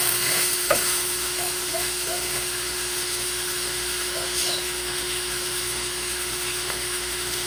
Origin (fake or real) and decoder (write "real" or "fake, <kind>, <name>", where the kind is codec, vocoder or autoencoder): fake, autoencoder, DAC-VAE